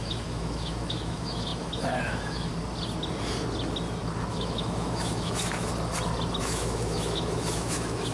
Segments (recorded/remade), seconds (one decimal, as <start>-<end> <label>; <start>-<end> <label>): 0.0-2.5 remade; 2.5-4.3 recorded; 4.3-5.7 remade; 5.7-6.4 recorded; 6.4-8.1 remade